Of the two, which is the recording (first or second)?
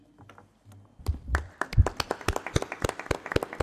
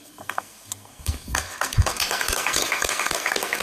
first